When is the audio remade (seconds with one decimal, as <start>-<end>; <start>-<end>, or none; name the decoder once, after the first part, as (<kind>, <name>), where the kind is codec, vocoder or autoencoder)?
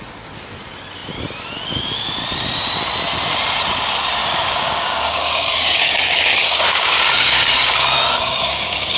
4.2-9.0 (codec, DAC)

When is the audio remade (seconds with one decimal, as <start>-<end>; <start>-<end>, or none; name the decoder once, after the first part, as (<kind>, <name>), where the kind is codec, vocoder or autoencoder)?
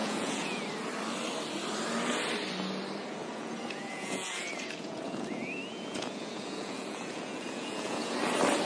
0.0-0.7 (vocoder, Vocos); 3.2-8.2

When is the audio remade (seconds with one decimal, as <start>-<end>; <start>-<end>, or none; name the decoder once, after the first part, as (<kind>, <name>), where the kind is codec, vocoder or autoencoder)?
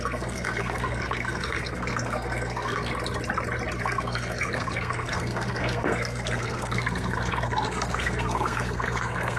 0.0-2.9 (codec, SNAC); 3.8-9.4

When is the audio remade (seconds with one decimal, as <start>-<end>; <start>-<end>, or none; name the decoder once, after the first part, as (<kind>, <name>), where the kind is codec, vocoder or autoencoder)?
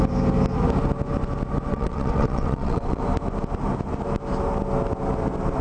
1.7-3.0 (vocoder, WaveNeXt)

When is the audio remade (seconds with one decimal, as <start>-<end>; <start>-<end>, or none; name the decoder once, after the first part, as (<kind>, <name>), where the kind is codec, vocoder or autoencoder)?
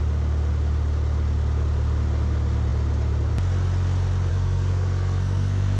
4.3-5.8 (codec, SNAC)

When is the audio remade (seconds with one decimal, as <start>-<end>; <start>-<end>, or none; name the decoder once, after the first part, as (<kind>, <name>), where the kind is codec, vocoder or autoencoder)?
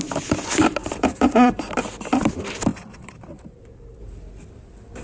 0.8-1.8 (vocoder, BigVGAN v2); 2.7-4.0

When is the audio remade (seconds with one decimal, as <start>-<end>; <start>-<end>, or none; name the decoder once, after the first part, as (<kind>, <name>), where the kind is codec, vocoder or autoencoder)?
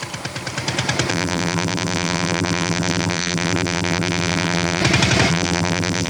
1.1-4.8 (vocoder, BigVGAN v2); 5.3-6.1